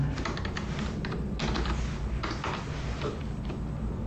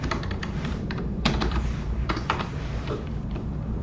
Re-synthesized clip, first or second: second